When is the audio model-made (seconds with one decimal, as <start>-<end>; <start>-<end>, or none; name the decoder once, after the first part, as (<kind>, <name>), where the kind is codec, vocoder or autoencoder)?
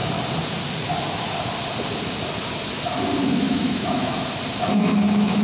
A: 3.2-4.1 (autoencoder, DAC-VAE); 4.7-5.4